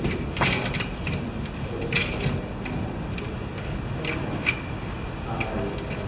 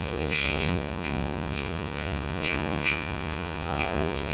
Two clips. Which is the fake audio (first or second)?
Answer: second